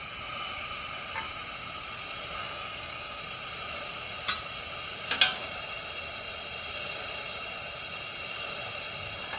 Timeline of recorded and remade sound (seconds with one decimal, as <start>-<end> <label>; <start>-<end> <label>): 0.0-2.4 recorded; 2.4-3.2 remade; 3.2-9.4 recorded